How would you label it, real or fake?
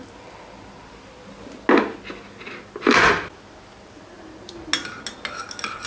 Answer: real